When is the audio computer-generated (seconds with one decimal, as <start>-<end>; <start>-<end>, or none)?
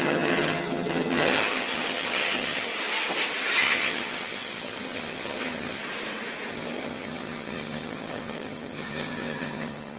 0.0-2.7; 3.6-5.8; 6.5-10.0